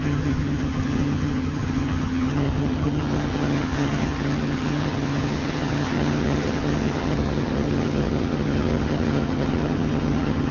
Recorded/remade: remade